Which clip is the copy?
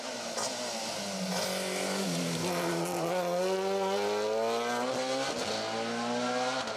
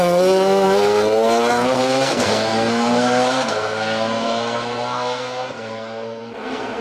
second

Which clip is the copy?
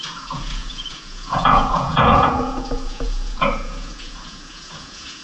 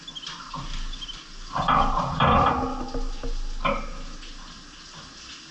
first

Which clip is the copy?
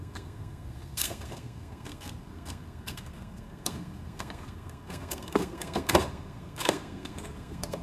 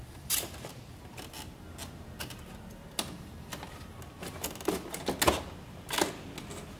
first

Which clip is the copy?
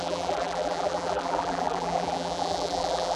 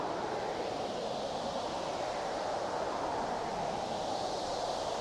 first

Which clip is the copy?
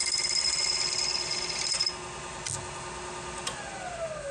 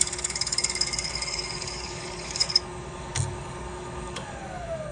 second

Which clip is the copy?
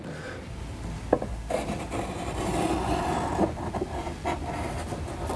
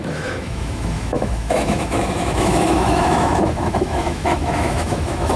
second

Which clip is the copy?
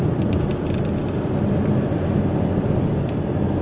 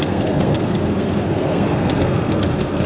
second